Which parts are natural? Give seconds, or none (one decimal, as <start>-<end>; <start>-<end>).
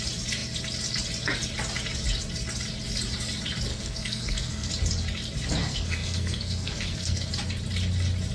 0.0-3.7; 4.7-5.6; 7.3-8.3